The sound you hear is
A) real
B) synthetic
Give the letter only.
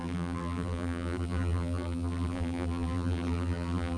B